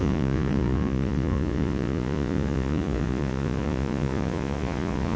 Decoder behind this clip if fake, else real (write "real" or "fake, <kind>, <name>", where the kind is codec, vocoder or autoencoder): fake, vocoder, Vocos